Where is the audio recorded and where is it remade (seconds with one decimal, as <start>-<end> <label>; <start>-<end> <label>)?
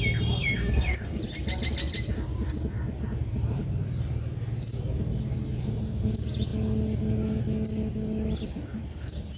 0.0-0.4 recorded; 0.4-1.2 remade; 1.2-9.4 recorded